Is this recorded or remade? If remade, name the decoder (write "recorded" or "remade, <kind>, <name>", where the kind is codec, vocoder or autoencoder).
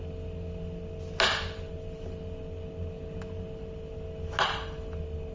recorded